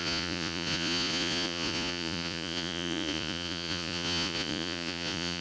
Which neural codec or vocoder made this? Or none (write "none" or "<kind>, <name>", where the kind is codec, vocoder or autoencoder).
vocoder, Vocos